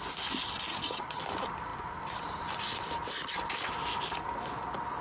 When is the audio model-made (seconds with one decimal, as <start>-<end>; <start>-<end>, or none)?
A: 0.7-1.2